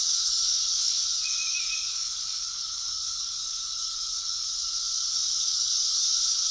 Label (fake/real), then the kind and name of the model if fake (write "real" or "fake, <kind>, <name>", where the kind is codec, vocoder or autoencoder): fake, codec, DAC